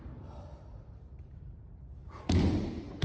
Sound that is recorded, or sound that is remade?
remade